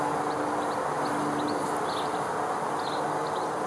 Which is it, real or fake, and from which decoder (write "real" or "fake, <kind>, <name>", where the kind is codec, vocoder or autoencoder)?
real